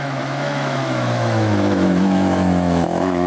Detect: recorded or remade remade